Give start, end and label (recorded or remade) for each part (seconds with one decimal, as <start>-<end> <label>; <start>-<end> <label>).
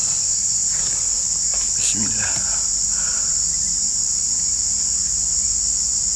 0.0-6.2 recorded